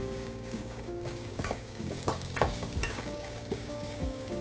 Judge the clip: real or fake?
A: fake